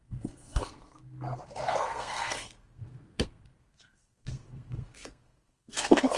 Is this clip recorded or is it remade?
remade